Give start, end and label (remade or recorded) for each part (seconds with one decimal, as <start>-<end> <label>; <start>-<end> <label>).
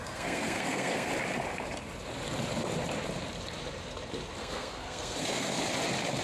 0.0-1.1 remade; 1.1-4.4 recorded; 4.4-5.6 remade; 5.6-6.2 recorded